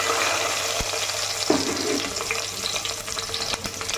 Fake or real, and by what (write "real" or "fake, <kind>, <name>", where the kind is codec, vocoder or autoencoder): real